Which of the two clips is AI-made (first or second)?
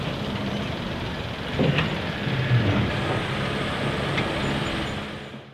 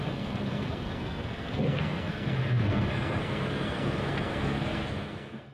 second